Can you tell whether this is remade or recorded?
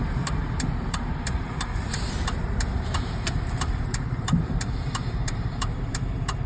remade